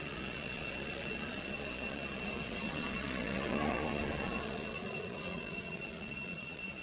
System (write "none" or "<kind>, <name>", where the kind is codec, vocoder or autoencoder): vocoder, Vocos